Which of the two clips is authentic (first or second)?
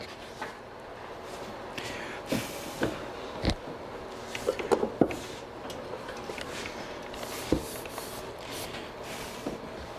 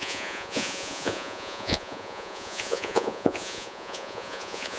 first